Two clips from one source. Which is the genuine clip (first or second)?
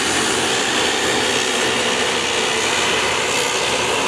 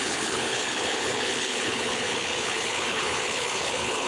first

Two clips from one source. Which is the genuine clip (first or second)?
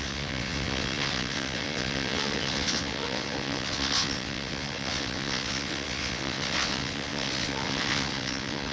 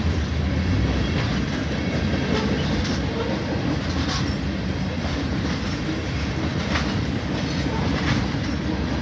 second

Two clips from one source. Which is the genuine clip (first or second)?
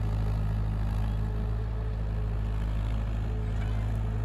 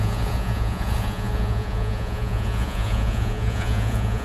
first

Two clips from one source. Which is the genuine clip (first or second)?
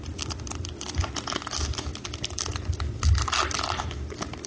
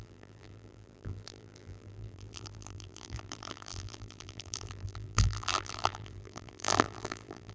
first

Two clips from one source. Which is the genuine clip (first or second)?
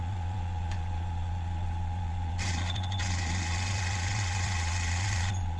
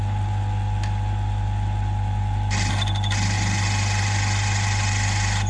second